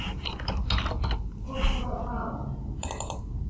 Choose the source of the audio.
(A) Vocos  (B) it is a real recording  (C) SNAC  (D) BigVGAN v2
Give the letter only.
B